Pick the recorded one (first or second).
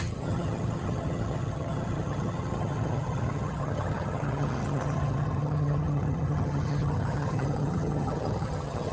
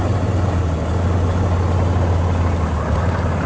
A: second